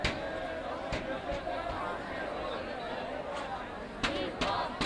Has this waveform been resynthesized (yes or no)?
no